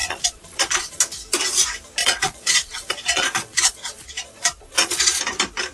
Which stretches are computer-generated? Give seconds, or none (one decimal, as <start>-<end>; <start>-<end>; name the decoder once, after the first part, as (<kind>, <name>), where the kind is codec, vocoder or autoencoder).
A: 0.0-1.0 (vocoder, Vocos); 2.0-5.2